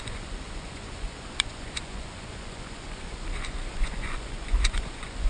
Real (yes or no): no